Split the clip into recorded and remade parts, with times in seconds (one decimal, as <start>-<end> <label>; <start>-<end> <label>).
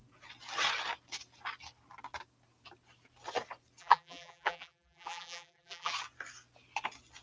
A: 0.0-3.8 recorded; 3.8-5.9 remade; 5.9-7.2 recorded